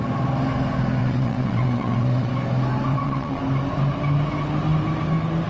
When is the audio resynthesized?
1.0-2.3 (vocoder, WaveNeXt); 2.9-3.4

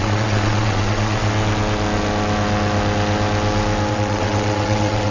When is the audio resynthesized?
0.0-1.2 (vocoder, WaveNeXt); 3.9-5.1

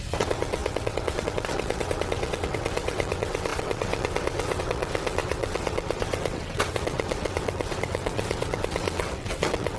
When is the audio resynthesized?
0.0-9.8 (vocoder, WaveNeXt)

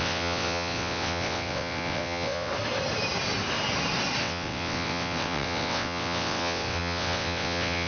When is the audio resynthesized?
0.0-2.5 (vocoder, WaveNeXt); 4.2-7.9

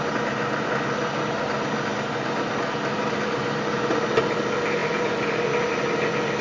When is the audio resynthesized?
none

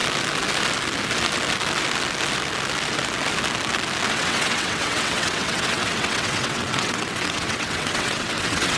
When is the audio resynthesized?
4.1-8.8 (vocoder, WaveNeXt)

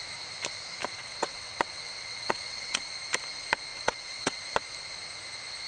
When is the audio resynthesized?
1.0-2.8 (vocoder, WaveNeXt); 3.7-4.4

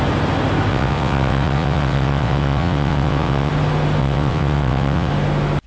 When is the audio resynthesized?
0.7-3.5 (vocoder, WaveNeXt); 4.0-5.1